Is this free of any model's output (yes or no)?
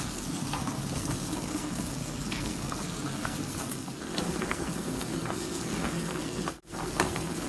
no